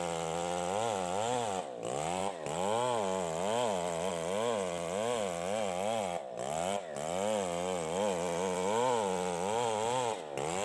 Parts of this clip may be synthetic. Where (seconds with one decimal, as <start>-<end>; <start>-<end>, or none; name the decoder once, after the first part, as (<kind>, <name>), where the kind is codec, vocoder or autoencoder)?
none